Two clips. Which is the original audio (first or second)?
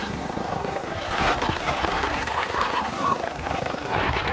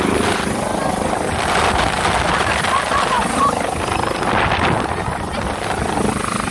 second